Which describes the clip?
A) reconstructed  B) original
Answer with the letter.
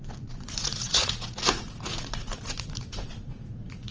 A